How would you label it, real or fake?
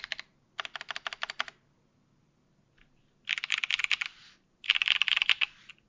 real